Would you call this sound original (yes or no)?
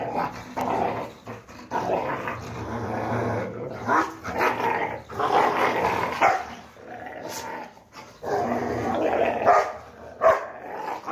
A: yes